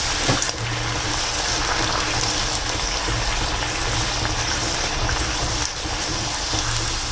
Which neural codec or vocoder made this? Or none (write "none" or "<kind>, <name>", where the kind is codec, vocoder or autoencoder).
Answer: none